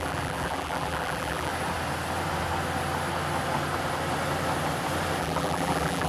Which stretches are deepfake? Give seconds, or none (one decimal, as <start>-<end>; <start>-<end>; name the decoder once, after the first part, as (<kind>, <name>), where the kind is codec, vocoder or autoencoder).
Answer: 0.0-1.5 (vocoder, BigVGAN v2); 5.2-6.1